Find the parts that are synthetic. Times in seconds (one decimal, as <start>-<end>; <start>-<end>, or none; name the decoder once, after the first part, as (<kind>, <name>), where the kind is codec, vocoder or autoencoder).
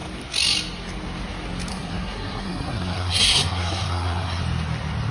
1.7-4.4 (codec, SNAC)